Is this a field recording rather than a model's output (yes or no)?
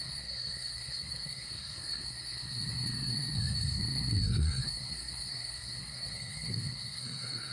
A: no